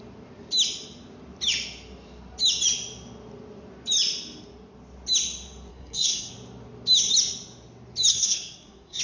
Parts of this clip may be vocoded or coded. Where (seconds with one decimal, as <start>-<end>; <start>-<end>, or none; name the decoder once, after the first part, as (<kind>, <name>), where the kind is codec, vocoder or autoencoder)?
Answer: 5.7-6.3 (codec, SNAC); 8.1-9.0